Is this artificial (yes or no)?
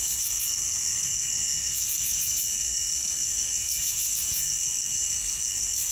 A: yes